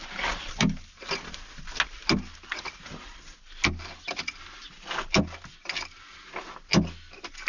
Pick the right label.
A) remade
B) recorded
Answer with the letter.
B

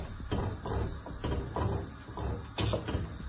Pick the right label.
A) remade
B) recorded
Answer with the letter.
B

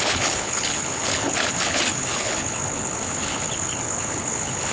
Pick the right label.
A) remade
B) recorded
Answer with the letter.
A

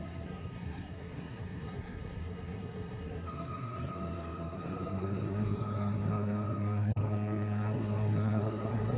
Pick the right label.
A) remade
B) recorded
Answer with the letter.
A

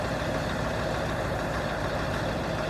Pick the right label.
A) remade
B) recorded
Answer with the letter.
A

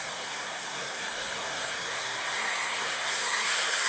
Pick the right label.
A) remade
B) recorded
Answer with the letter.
A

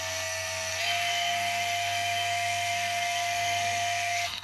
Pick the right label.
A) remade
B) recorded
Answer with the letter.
A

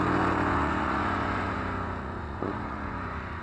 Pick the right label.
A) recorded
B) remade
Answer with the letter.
B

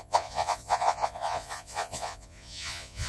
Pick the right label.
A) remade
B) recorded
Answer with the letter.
A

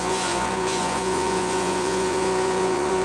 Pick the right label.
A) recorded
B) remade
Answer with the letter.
B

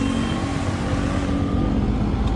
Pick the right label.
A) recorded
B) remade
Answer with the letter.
A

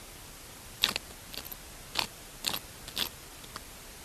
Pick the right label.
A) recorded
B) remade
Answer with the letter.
A